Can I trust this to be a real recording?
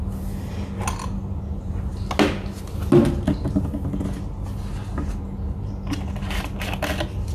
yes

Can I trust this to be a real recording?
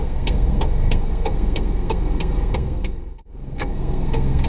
no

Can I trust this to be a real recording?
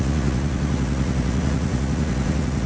no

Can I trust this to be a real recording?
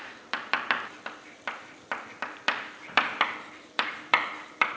no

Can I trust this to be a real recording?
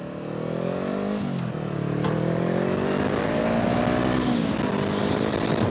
yes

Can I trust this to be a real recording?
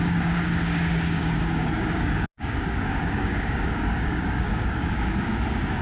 no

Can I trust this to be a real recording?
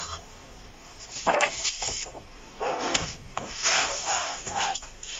no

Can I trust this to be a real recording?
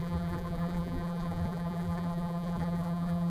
no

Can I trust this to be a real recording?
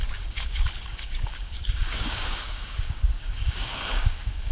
no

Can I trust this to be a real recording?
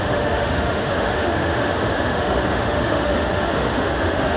no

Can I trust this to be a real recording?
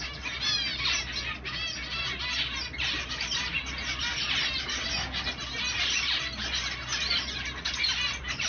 yes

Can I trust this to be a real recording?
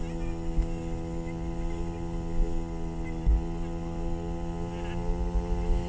yes